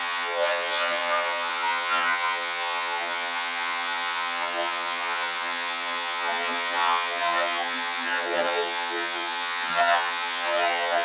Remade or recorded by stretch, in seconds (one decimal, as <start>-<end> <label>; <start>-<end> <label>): 0.0-11.0 remade